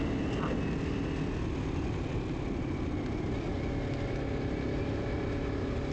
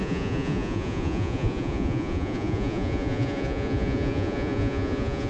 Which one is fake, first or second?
second